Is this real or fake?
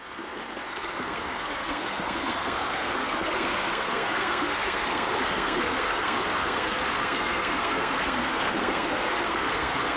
fake